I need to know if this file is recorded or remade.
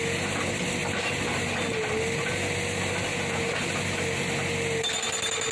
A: recorded